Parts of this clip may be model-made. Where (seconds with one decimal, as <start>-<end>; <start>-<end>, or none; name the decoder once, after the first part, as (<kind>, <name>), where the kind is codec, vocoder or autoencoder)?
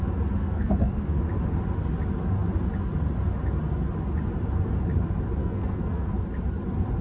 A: 0.4-1.2 (codec, SNAC); 5.4-6.1